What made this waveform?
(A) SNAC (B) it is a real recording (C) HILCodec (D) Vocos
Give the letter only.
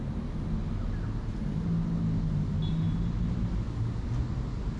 B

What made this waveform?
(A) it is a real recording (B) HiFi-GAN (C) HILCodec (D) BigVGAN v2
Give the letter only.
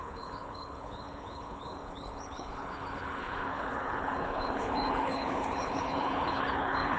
C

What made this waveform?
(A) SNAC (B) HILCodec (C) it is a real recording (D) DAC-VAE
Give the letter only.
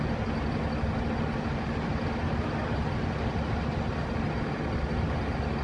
C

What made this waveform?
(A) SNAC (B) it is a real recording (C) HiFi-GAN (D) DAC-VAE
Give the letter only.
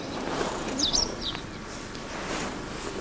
B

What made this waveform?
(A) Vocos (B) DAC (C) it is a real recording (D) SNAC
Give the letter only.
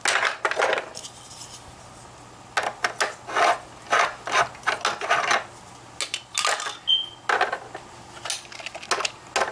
C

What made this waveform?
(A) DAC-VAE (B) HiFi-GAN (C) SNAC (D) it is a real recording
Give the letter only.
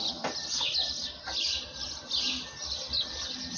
D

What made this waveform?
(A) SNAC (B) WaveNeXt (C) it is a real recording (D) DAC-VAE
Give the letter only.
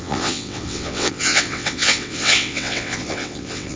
B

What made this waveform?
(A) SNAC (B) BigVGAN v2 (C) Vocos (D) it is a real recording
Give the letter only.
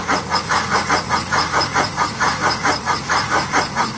C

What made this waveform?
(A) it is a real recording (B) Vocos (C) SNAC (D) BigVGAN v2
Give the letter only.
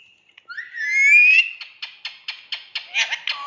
A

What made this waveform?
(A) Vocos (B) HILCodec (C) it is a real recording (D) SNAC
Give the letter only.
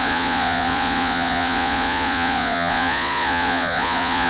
A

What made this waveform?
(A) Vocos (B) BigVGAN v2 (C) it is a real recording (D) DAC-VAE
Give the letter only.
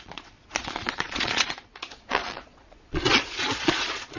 A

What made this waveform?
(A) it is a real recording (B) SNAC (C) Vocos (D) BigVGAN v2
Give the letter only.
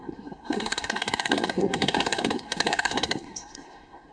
B